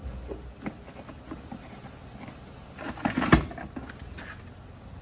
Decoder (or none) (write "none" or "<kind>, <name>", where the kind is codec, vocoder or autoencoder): none